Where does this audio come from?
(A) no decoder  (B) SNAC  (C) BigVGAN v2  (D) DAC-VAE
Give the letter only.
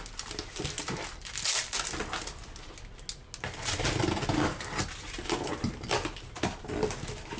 A